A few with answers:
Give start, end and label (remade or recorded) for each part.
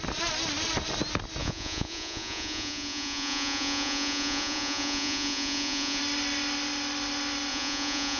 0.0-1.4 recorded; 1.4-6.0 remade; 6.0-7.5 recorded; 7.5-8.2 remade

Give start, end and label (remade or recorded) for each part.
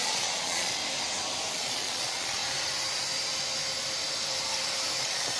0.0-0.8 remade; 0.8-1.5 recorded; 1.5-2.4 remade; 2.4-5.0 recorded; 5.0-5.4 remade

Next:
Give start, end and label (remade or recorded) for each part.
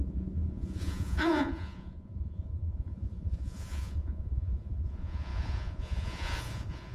0.0-6.9 remade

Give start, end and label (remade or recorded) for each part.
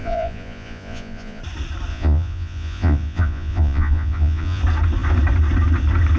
0.0-1.4 remade; 1.4-1.9 recorded; 1.9-4.6 remade; 4.6-6.2 recorded